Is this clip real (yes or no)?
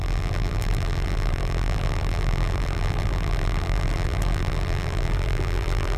no